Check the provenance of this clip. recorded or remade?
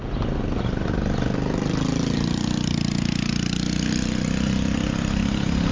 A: recorded